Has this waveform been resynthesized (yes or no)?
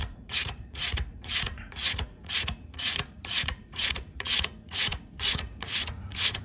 yes